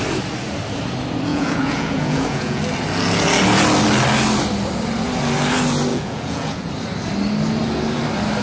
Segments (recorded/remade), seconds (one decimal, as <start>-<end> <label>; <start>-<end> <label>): 0.0-1.3 recorded; 1.3-2.6 remade; 2.6-5.9 recorded; 5.9-6.7 remade; 6.7-8.4 recorded